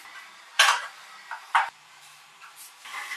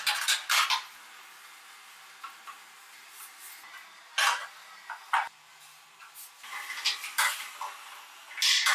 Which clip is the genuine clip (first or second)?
second